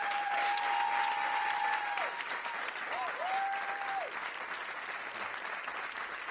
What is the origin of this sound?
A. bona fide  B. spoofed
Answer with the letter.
A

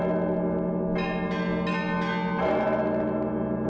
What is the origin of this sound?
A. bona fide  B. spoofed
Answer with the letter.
A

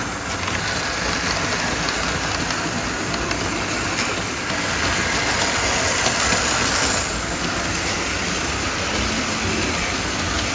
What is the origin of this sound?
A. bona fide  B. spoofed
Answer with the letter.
A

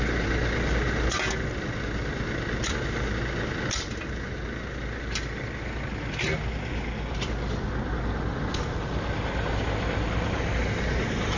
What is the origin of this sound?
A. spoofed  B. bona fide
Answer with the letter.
B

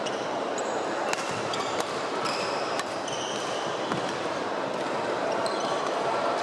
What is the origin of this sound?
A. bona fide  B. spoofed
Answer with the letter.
B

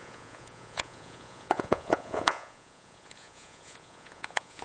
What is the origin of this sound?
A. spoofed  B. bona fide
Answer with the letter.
A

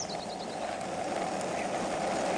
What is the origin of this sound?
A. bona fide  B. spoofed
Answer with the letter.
A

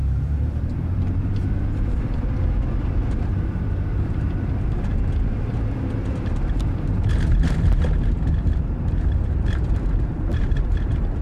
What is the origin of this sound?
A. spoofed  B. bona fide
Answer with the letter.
A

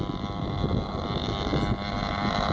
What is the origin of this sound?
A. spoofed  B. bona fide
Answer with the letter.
B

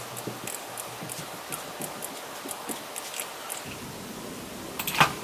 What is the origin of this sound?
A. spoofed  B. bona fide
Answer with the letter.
B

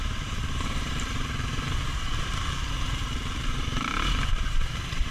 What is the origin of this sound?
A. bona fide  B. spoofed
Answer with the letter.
B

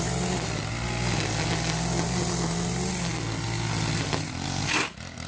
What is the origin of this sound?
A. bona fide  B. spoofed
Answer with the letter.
A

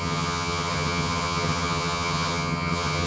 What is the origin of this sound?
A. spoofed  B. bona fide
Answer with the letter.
A